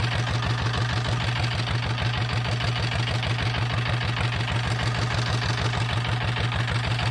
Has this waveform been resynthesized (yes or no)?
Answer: no